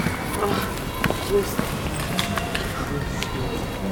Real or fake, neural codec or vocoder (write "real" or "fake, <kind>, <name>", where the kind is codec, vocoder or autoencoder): real